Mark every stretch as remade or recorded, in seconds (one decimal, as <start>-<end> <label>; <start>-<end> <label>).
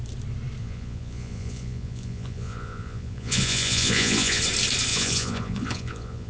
0.0-0.6 recorded; 0.6-4.4 remade; 4.4-4.9 recorded; 4.9-6.3 remade